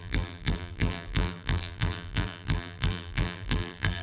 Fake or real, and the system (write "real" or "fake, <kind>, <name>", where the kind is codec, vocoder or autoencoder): fake, vocoder, BigVGAN v2